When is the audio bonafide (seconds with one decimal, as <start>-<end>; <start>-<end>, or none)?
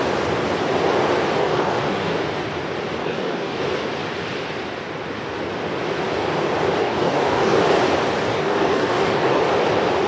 0.0-1.4; 2.2-3.0; 3.6-6.8; 7.6-8.3; 9.4-10.1